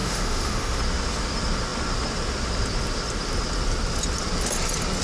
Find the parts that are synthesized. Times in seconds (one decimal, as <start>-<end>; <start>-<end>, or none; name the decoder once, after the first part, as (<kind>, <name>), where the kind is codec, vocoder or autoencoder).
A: 0.0-0.8 (autoencoder, DAC-VAE)